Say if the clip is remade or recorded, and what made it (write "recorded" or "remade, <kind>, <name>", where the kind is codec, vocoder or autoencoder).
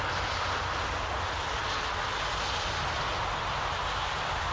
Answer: recorded